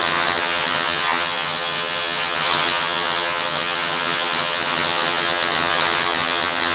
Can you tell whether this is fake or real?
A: fake